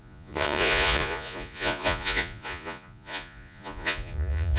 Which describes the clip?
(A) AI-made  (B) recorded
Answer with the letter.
A